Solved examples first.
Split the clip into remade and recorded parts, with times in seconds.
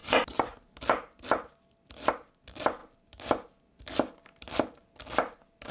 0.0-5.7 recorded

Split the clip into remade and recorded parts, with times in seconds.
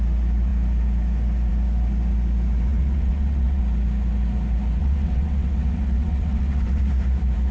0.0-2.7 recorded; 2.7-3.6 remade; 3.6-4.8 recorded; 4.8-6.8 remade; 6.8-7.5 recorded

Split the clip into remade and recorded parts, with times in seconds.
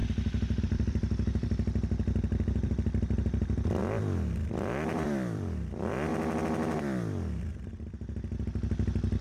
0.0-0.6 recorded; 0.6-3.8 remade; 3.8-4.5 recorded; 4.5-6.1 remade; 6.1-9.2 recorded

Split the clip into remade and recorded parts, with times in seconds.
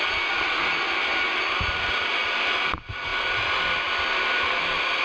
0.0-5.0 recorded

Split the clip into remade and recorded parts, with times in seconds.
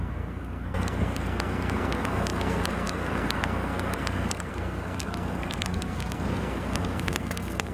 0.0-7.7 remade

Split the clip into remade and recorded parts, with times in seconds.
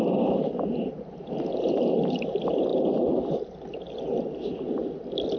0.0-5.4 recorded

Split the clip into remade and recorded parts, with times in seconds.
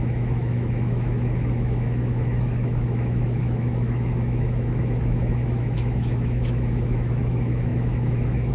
0.0-8.5 remade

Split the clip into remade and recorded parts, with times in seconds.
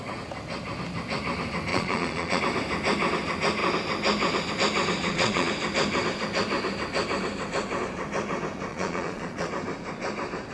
0.0-1.7 recorded; 1.7-2.4 remade; 2.4-5.0 recorded; 5.0-5.5 remade; 5.5-8.7 recorded; 8.7-9.5 remade; 9.5-10.5 recorded